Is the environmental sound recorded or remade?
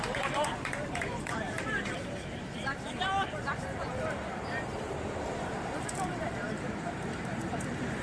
remade